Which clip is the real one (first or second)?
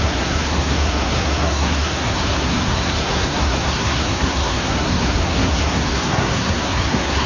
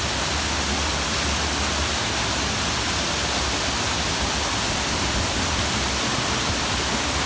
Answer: second